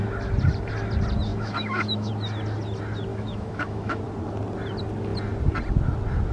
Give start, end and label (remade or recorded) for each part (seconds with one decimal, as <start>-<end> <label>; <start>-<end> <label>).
0.0-1.3 recorded; 1.3-2.1 remade; 2.1-3.1 recorded; 3.1-4.0 remade; 4.0-6.3 recorded